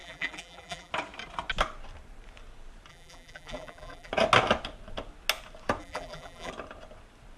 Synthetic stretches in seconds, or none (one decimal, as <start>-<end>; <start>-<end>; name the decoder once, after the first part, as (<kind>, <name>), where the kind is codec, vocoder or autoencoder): 0.0-0.9 (vocoder, BigVGAN v2); 2.9-4.1; 5.8-6.5